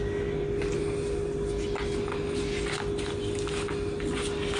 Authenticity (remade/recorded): recorded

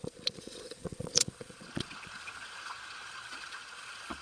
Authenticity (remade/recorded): remade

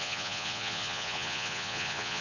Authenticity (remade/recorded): remade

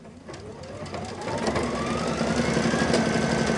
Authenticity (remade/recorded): recorded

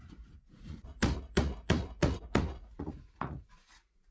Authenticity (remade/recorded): remade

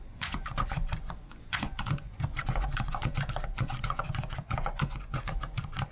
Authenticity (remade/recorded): remade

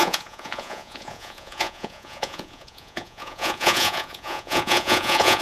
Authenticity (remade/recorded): remade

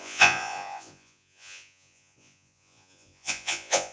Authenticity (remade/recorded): remade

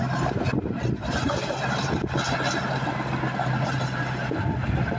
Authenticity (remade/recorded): recorded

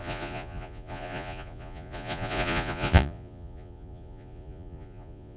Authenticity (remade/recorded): remade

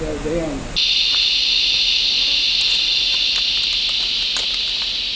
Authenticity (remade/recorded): recorded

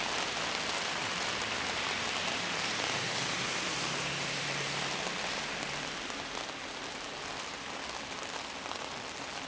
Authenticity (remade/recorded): recorded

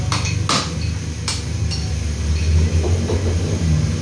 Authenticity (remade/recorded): recorded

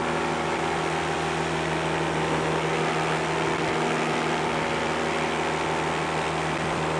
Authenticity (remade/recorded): recorded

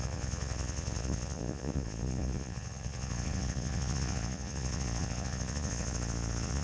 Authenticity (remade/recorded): remade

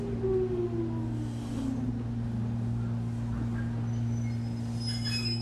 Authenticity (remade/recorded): recorded